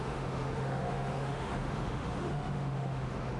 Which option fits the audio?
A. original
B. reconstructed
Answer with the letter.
B